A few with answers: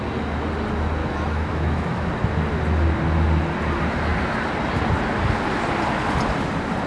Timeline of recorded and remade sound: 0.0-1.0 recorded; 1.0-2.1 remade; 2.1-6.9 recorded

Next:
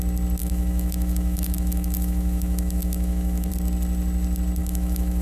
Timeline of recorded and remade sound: 0.0-0.4 recorded; 0.4-3.5 remade; 3.5-4.6 recorded; 4.6-5.2 remade

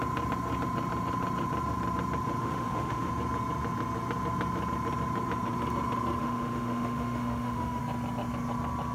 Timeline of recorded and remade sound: 0.0-2.4 recorded; 2.4-3.1 remade; 3.1-6.2 recorded; 6.2-7.8 remade; 7.8-8.9 recorded

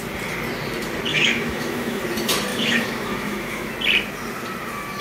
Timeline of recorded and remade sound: 0.0-1.1 recorded; 1.1-2.0 remade; 2.0-2.5 recorded; 2.5-3.7 remade; 3.7-5.0 recorded

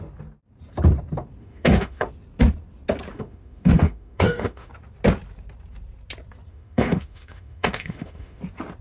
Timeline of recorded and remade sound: 0.0-1.4 recorded; 1.4-2.1 remade; 2.1-3.1 recorded; 3.1-4.7 remade; 4.7-6.5 recorded; 6.5-8.4 remade; 8.4-8.8 recorded

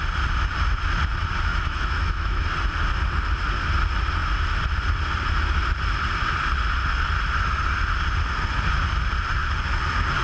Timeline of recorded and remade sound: 0.0-1.5 recorded; 1.5-2.4 remade; 2.4-10.2 recorded

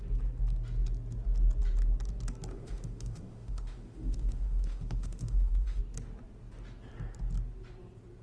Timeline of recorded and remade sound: 0.0-2.5 recorded; 2.5-5.8 remade; 5.8-8.2 recorded